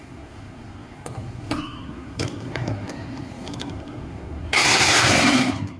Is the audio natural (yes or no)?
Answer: no